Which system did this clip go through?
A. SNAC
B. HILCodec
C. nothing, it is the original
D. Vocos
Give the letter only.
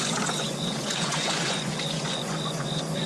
D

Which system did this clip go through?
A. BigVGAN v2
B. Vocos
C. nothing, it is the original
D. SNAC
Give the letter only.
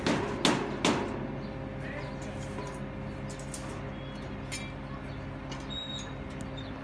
C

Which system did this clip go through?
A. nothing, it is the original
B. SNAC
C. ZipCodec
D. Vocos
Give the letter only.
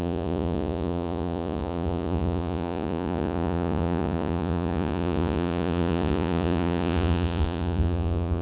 D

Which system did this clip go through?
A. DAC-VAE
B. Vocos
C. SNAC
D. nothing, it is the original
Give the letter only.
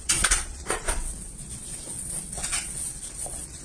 B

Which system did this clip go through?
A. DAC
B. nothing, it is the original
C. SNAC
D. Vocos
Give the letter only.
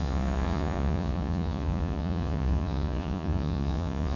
D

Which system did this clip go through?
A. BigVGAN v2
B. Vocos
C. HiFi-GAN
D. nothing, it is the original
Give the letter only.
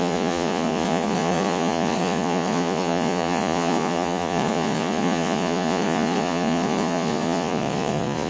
B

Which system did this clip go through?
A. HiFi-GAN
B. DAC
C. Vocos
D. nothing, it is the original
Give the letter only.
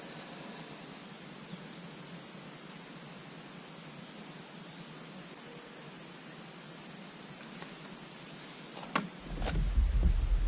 D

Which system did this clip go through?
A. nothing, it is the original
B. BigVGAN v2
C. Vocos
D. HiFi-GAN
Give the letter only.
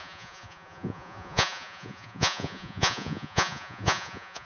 C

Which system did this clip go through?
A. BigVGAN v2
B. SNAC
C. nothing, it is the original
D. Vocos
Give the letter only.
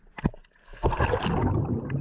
C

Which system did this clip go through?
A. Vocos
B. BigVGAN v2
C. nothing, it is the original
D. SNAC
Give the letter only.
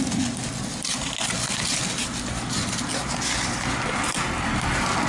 C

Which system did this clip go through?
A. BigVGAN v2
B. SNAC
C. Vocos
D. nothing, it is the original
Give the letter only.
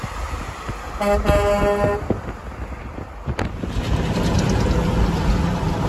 D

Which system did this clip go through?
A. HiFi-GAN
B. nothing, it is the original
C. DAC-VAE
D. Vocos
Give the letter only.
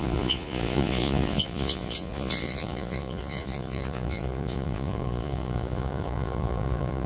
D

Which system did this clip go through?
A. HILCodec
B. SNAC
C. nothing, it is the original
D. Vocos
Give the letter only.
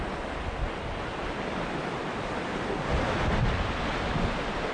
C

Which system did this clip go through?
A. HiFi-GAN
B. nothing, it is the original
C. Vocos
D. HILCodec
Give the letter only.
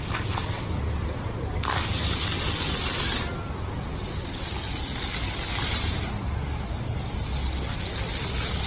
B